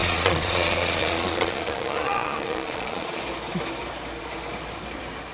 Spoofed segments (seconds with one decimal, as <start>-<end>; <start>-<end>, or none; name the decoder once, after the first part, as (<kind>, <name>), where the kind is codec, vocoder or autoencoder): 0.0-3.2 (vocoder, Vocos)